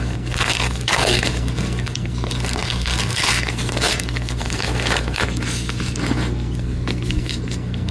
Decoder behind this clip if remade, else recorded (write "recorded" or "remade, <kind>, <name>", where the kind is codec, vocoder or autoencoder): remade, codec, SNAC